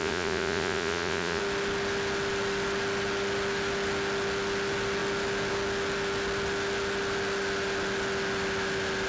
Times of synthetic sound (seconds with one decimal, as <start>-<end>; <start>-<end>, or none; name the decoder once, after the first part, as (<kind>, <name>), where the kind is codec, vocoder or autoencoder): 0.0-1.4 (vocoder, Vocos)